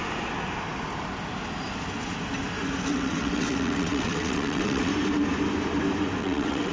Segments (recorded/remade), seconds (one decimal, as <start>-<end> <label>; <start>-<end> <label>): 0.0-2.9 recorded; 2.9-4.9 remade; 4.9-6.2 recorded; 6.2-6.7 remade